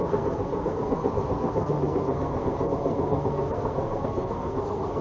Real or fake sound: fake